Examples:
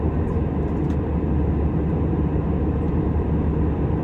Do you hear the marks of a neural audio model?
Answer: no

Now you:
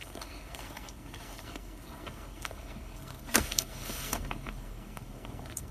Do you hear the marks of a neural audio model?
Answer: yes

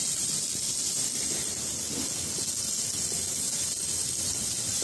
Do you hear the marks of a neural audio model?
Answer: no